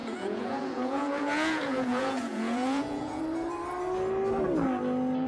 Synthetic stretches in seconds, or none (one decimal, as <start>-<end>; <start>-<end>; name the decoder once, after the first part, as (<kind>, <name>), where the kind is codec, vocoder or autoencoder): 0.0-3.2 (vocoder, Vocos)